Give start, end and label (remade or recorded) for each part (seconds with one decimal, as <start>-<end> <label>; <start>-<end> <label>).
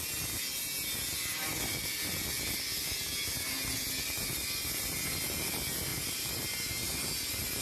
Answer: 0.0-5.9 recorded; 5.9-7.0 remade; 7.0-7.6 recorded